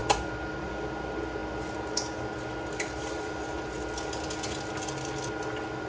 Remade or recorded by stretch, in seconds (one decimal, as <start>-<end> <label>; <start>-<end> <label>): 0.0-5.9 recorded